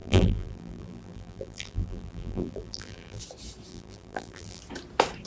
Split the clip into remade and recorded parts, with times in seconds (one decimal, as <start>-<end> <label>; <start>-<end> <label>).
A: 0.0-3.2 remade; 3.2-3.7 recorded; 3.7-4.6 remade; 4.6-5.3 recorded